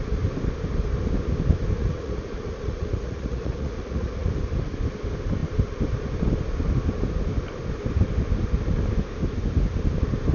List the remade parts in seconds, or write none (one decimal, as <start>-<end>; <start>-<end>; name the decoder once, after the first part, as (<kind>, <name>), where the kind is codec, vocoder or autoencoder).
1.8-4.3 (vocoder, Vocos)

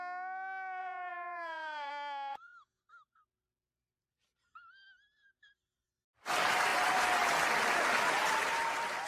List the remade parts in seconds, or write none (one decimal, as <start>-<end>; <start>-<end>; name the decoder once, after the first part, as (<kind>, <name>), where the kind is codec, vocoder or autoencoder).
0.8-1.9 (vocoder, Vocos); 2.3-2.8

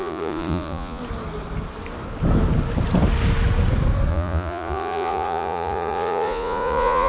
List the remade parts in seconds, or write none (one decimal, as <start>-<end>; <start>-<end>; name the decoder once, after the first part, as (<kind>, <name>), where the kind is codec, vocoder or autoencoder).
0.0-1.0 (vocoder, Vocos); 4.1-7.1

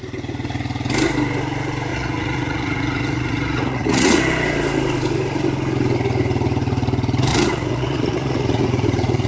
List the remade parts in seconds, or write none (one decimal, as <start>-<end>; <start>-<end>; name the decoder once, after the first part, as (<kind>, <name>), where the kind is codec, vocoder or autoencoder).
1.9-4.2 (vocoder, Vocos); 7.3-9.3

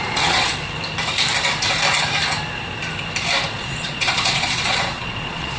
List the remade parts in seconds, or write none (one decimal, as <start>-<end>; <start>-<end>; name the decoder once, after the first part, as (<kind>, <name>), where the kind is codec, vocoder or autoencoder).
0.0-0.5 (vocoder, Vocos); 3.5-5.6

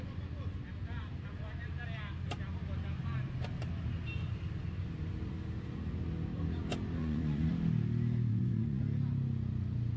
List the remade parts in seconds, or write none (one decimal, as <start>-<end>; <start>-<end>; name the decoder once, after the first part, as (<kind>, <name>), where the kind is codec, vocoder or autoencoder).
7.0-7.5 (vocoder, Vocos); 8.3-8.8

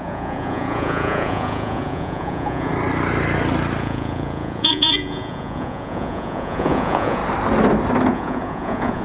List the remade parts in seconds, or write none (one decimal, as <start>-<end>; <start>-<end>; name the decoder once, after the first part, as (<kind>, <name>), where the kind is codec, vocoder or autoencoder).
0.0-2.7 (vocoder, Vocos); 3.8-7.2; 8.1-9.0